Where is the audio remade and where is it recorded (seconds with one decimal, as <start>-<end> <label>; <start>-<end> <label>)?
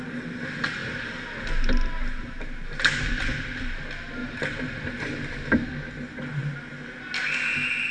0.0-4.2 recorded; 4.2-5.9 remade; 5.9-7.9 recorded